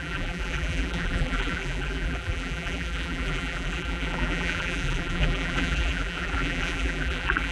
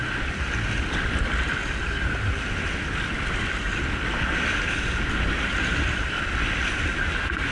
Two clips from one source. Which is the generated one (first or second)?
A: first